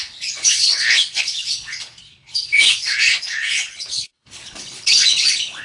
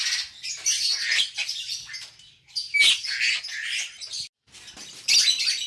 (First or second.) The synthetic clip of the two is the first